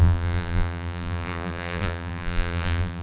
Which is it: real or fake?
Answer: fake